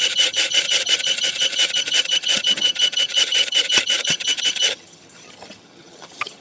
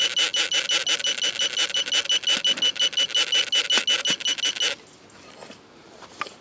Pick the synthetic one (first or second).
first